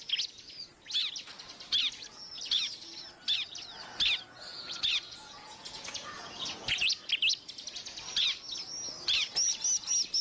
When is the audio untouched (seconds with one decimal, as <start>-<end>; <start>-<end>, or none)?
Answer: 0.0-4.5; 7.1-10.2